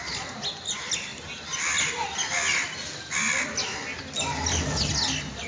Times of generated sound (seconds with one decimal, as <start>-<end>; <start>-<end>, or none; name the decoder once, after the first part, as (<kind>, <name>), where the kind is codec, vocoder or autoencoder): none